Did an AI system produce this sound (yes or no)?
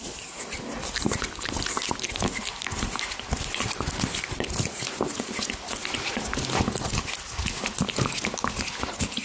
no